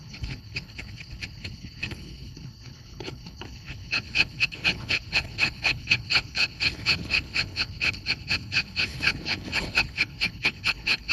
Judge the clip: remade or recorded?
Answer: remade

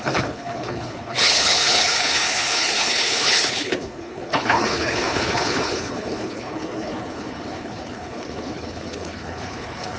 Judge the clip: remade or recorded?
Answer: remade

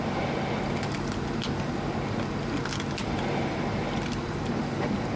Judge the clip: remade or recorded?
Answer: recorded